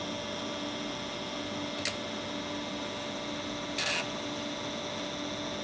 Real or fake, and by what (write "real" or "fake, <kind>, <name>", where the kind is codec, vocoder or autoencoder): real